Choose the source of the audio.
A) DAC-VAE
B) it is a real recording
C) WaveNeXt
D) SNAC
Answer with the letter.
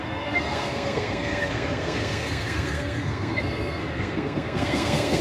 D